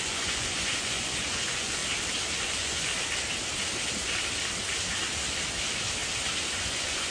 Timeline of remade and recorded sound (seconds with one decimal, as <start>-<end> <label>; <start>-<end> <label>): 0.0-1.8 remade; 1.8-2.4 recorded; 2.4-2.9 remade; 2.9-6.5 recorded; 6.5-7.1 remade

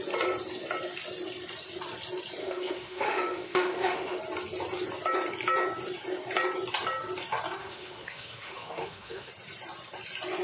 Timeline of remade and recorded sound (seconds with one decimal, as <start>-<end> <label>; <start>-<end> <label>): 0.0-2.4 recorded; 2.4-4.2 remade; 4.2-7.6 recorded; 7.6-9.3 remade; 9.3-10.4 recorded

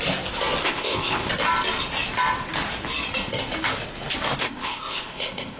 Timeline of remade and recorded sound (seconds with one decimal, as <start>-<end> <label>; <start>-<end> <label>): 0.0-0.6 recorded; 0.6-1.3 remade; 1.3-4.4 recorded; 4.4-5.6 remade

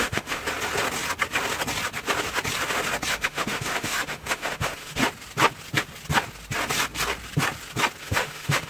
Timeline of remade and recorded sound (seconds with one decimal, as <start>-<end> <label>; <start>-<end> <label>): 0.0-0.4 remade; 0.4-3.1 recorded; 3.1-5.0 remade; 5.0-8.0 recorded; 8.0-8.7 remade

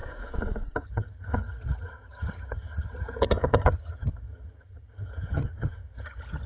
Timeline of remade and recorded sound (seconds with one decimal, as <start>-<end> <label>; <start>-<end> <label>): 0.0-0.8 recorded; 0.8-6.5 remade

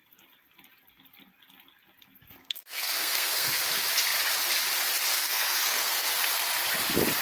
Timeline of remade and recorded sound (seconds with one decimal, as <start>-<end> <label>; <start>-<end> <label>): 0.0-2.4 recorded; 2.4-3.6 remade; 3.6-5.1 recorded; 5.1-6.1 remade; 6.1-7.2 recorded

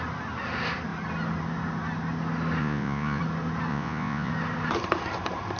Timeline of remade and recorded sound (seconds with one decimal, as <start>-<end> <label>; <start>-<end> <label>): 0.0-2.6 recorded; 2.6-3.2 remade; 3.2-3.7 recorded; 3.7-4.3 remade; 4.3-5.6 recorded